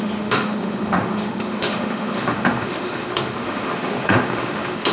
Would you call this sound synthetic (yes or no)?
yes